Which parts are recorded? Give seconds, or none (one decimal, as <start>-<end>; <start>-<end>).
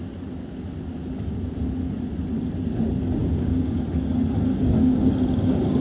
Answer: 0.0-3.2; 3.9-4.5; 5.1-5.8